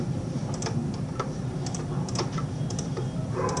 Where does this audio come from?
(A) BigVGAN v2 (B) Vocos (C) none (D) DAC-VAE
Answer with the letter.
A